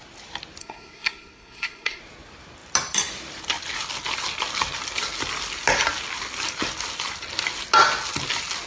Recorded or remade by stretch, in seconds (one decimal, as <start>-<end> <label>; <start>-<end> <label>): 0.0-0.6 recorded; 0.6-2.0 remade; 2.0-8.7 recorded